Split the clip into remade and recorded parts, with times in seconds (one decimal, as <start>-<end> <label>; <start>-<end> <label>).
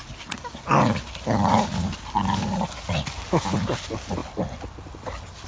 0.0-5.5 recorded